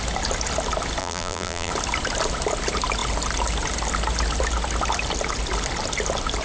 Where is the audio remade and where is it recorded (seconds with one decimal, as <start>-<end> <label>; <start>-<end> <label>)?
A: 0.0-1.0 recorded; 1.0-1.7 remade; 1.7-6.4 recorded

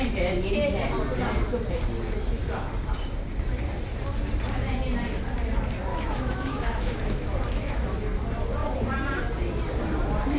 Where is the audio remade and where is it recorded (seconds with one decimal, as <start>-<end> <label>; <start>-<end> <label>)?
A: 0.0-5.9 recorded; 5.9-7.8 remade; 7.8-10.4 recorded

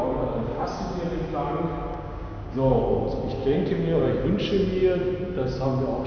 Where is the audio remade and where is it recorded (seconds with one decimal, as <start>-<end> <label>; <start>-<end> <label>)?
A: 0.0-0.4 recorded; 0.4-1.0 remade; 1.0-1.9 recorded; 1.9-2.8 remade; 2.8-3.4 recorded; 3.4-4.0 remade; 4.0-6.1 recorded

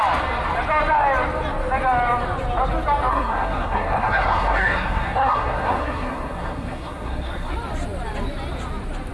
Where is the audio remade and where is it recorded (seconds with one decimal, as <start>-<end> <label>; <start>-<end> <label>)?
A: 0.0-3.1 recorded; 3.1-7.5 remade; 7.5-9.1 recorded

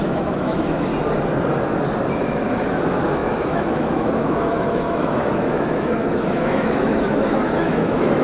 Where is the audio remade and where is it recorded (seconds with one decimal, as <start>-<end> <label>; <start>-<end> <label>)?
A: 0.0-0.9 remade; 0.9-2.1 recorded; 2.1-8.2 remade

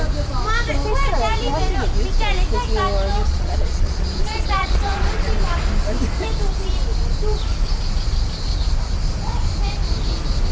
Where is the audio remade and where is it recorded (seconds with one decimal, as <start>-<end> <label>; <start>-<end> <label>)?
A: 0.0-3.2 recorded; 3.2-5.4 remade; 5.4-10.5 recorded